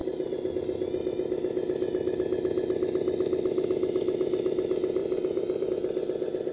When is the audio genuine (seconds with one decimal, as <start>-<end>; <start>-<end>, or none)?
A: 0.5-5.0; 5.7-6.5